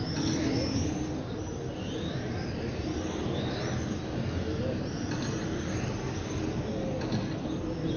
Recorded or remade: recorded